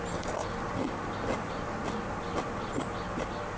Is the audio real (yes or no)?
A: yes